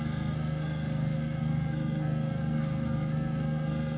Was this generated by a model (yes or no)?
yes